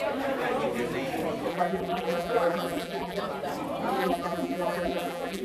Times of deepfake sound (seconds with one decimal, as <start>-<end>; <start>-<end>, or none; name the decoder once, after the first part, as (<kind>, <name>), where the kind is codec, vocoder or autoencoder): 1.5-3.2 (vocoder, BigVGAN v2); 4.0-5.4